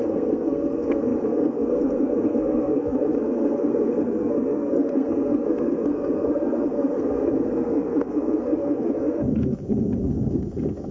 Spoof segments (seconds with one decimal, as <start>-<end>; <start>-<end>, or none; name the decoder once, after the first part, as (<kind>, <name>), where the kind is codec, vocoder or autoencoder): 0.0-10.9 (codec, SNAC)